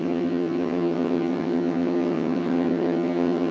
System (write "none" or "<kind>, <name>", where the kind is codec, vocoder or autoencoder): vocoder, HiFi-GAN